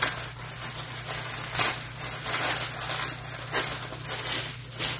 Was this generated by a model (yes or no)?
no